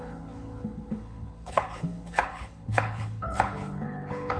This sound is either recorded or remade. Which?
remade